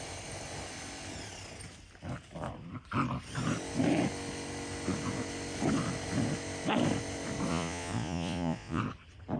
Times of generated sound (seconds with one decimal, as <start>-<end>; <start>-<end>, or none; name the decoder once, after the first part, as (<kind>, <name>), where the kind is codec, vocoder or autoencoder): 7.5-8.8 (vocoder, Vocos)